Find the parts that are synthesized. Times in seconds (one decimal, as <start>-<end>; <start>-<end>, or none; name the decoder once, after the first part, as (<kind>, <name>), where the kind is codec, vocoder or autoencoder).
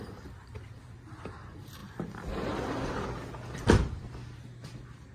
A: none